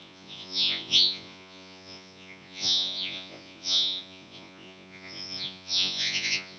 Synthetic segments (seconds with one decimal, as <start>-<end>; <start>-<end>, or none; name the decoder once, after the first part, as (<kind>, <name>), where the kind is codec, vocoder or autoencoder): 0.0-6.6 (vocoder, Vocos)